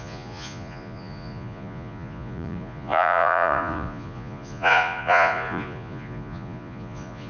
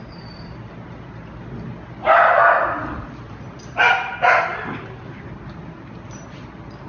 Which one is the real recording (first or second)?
second